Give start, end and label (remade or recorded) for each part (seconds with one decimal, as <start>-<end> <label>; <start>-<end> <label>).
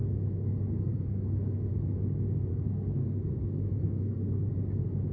0.0-1.7 remade; 1.7-2.5 recorded; 2.5-4.5 remade; 4.5-5.1 recorded